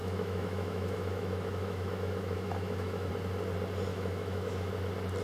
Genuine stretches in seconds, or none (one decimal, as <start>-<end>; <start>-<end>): 3.1-3.9; 4.7-5.2